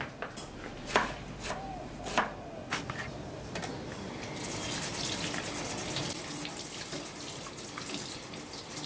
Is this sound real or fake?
real